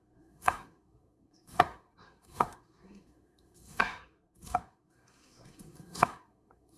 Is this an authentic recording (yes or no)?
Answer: no